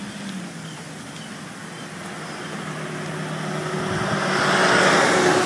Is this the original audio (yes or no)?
yes